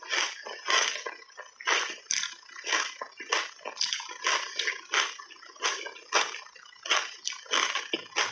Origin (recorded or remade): recorded